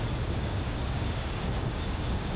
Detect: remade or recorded remade